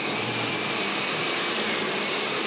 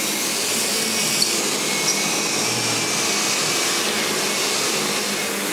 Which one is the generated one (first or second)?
first